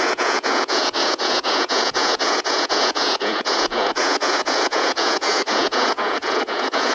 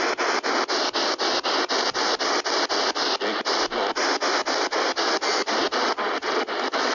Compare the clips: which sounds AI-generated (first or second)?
first